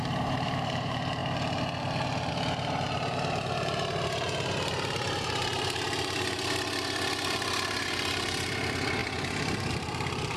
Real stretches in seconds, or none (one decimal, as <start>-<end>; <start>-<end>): 1.2-2.3